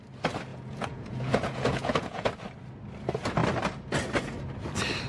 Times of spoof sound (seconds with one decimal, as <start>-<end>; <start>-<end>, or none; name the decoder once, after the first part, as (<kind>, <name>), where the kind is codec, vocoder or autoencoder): 0.5-2.3 (vocoder, Vocos)